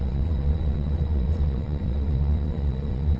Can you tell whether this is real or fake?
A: fake